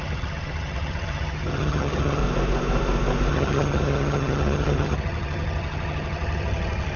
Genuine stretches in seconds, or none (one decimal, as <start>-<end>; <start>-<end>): 2.2-3.3